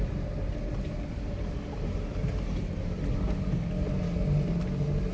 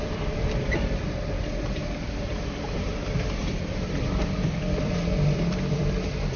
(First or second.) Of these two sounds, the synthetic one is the second